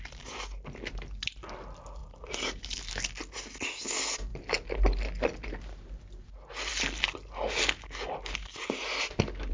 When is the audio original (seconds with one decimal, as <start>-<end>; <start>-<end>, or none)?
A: 0.0-2.0; 2.8-9.5